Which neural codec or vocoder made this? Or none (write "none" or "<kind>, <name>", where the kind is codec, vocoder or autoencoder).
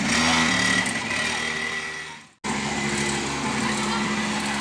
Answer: none